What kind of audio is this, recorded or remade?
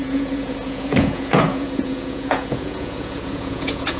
remade